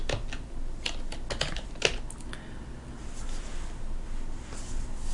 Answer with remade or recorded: recorded